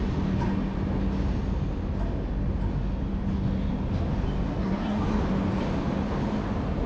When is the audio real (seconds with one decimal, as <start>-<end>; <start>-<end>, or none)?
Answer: 0.0-4.5; 5.2-6.9